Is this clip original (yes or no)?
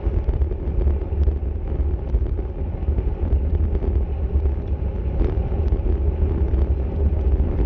yes